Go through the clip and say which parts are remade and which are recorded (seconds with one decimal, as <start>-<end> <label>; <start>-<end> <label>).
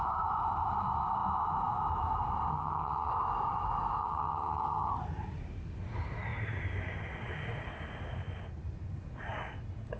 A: 0.0-2.5 recorded; 2.5-3.1 remade; 3.1-4.0 recorded; 4.0-4.9 remade; 4.9-10.0 recorded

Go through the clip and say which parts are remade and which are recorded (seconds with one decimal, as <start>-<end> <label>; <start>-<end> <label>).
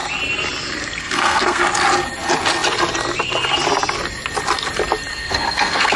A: 0.0-1.0 recorded; 1.0-1.6 remade; 1.6-5.1 recorded; 5.1-6.0 remade